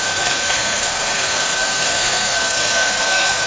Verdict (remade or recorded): remade